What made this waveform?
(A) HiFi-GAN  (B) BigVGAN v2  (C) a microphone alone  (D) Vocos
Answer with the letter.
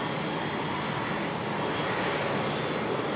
C